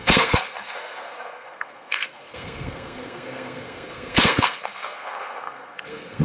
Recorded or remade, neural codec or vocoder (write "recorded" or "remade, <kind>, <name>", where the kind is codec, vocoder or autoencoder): remade, codec, SNAC